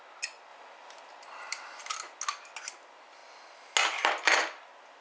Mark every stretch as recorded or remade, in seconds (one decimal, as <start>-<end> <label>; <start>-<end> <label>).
0.0-5.0 recorded